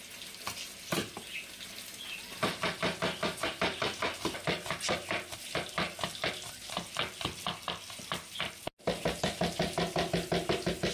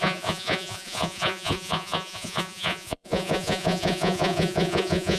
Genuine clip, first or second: first